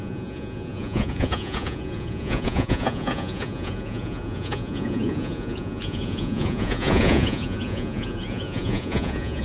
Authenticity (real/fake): fake